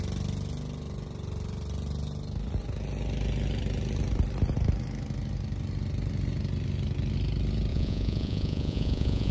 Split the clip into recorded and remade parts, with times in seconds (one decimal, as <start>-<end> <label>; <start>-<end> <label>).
0.0-7.7 recorded; 7.7-9.3 remade